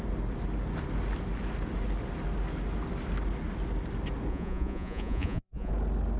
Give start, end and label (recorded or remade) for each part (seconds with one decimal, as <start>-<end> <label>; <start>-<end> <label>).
0.0-4.3 recorded; 4.3-5.7 remade; 5.7-6.2 recorded